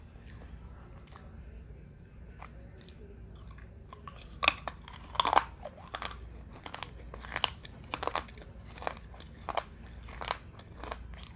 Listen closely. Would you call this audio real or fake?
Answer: real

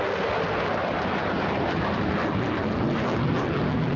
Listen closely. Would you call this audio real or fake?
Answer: real